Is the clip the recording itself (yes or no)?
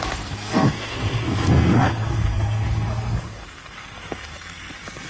no